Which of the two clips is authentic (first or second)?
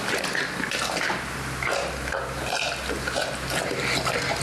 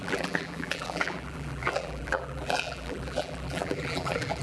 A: first